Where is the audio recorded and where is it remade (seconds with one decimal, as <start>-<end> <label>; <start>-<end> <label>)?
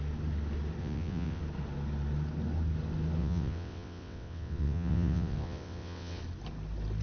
0.0-0.8 recorded; 0.8-1.4 remade; 1.4-3.2 recorded; 3.2-6.2 remade; 6.2-7.0 recorded